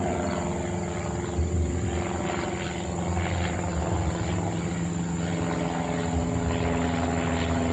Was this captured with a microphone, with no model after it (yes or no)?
yes